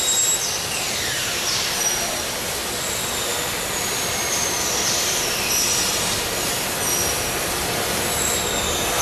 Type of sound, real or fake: real